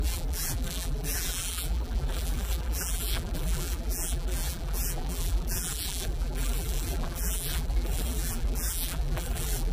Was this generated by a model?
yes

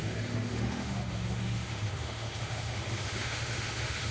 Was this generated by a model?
yes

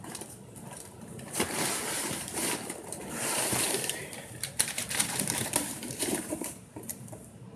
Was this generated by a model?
yes